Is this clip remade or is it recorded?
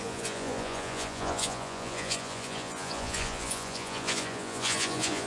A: remade